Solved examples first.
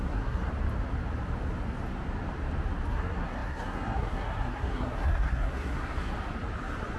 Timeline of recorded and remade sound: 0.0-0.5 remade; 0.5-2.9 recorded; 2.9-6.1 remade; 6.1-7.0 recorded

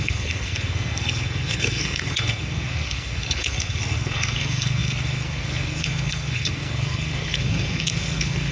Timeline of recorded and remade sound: 0.0-8.5 remade

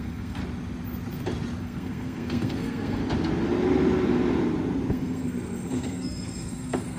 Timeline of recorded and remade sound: 0.0-0.4 remade; 0.4-1.6 recorded; 1.6-3.0 remade; 3.0-4.9 recorded; 4.9-7.0 remade

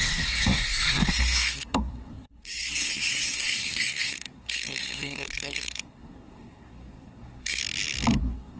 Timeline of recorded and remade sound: 0.0-7.6 remade; 7.6-8.2 recorded; 8.2-8.6 remade

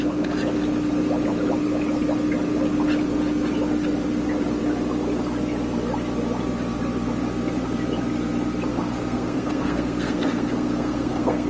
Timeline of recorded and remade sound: 0.0-8.7 recorded; 8.7-11.5 remade

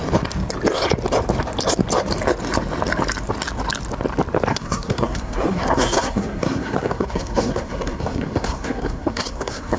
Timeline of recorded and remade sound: 0.0-4.5 recorded; 4.5-9.8 remade

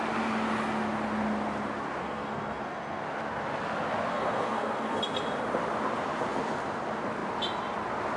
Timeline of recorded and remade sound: 0.0-2.0 recorded; 2.0-3.0 remade; 3.0-4.1 recorded; 4.1-5.0 remade; 5.0-8.2 recorded